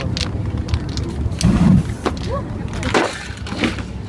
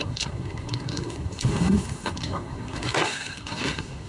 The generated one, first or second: second